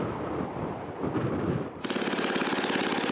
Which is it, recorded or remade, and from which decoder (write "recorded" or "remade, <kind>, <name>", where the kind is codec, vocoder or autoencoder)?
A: recorded